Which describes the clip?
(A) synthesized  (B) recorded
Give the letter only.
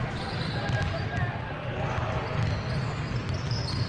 B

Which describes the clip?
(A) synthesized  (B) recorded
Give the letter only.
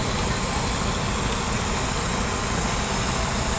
A